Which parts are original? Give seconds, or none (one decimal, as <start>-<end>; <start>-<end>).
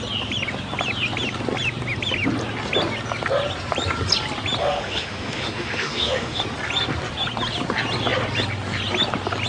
0.0-4.6; 6.4-9.5